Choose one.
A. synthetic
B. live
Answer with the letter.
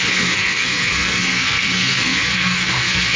A